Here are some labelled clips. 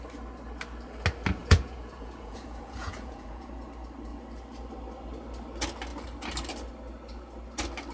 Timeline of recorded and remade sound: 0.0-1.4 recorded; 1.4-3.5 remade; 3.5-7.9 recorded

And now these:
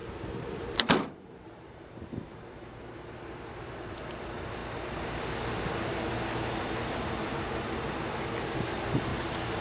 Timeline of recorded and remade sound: 0.0-3.9 remade; 3.9-9.1 recorded; 9.1-9.6 remade

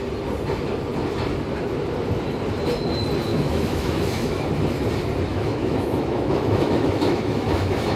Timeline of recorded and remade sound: 0.0-3.3 recorded; 3.3-4.4 remade; 4.4-5.3 recorded; 5.3-8.0 remade